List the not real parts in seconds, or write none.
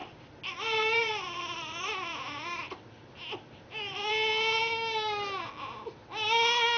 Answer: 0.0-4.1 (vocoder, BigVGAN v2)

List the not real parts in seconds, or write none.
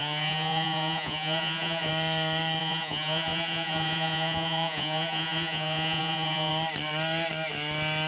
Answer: 0.0-1.9 (vocoder, Vocos); 2.6-6.5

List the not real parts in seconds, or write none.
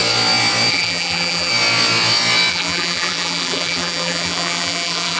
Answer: 0.7-1.5 (vocoder, BigVGAN v2); 2.5-5.2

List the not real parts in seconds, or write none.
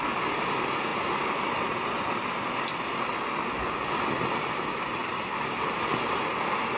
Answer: 0.9-2.1 (vocoder, BigVGAN v2); 5.0-6.2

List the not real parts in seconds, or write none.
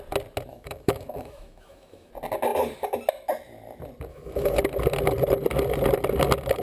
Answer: 0.5-2.1 (autoencoder, DAC-VAE); 4.1-4.6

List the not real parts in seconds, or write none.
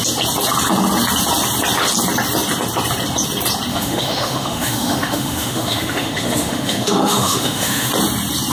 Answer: 3.7-7.9 (autoencoder, DAC-VAE)